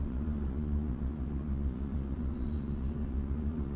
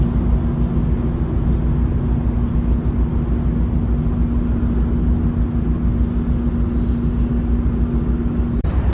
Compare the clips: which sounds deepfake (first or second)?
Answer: first